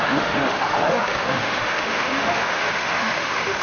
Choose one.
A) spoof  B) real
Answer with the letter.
A